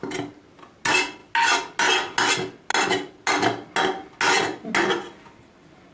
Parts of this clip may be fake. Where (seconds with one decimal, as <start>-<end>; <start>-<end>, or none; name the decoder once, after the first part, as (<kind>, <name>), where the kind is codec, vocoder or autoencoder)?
none